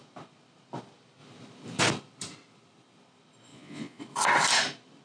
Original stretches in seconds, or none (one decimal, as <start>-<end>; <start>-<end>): 0.0-3.5; 4.0-5.0